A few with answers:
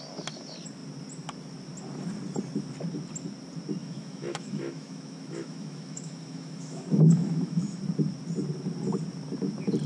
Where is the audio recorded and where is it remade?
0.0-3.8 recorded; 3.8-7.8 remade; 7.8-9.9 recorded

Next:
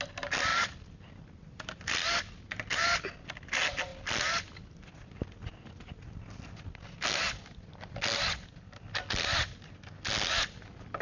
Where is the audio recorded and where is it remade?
0.0-11.0 recorded

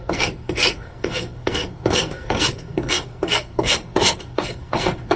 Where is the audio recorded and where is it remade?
0.0-5.2 remade

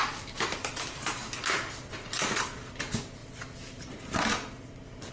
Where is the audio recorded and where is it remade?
0.0-1.2 remade; 1.2-3.2 recorded; 3.2-4.0 remade; 4.0-5.1 recorded

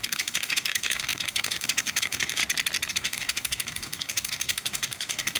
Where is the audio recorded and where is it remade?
0.0-2.4 remade; 2.4-2.9 recorded; 2.9-5.4 remade